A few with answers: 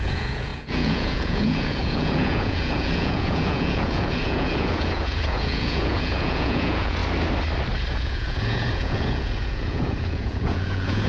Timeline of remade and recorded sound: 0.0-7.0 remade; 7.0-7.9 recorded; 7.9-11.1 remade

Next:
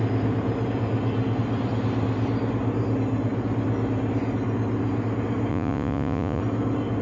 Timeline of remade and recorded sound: 0.0-5.5 recorded; 5.5-6.4 remade; 6.4-7.0 recorded

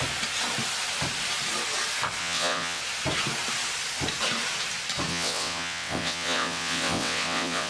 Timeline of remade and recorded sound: 0.0-2.2 recorded; 2.2-2.8 remade; 2.8-5.1 recorded; 5.1-7.7 remade

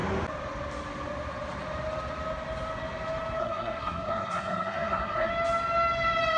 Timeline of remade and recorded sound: 0.0-3.4 recorded; 3.4-5.3 remade; 5.3-6.4 recorded

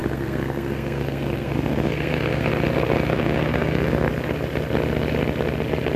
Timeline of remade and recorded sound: 0.0-2.5 remade; 2.5-3.1 recorded; 3.1-4.1 remade; 4.1-6.0 recorded

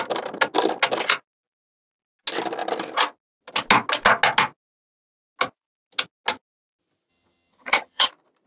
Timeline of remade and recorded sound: 0.0-7.1 recorded; 7.1-8.1 remade; 8.1-8.5 recorded